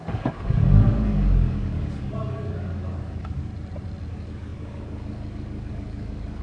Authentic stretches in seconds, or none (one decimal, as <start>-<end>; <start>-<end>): 3.5-4.1